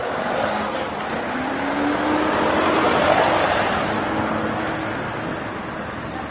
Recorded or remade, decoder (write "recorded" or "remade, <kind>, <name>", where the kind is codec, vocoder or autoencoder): recorded